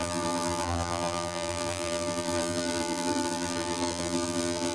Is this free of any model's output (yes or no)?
no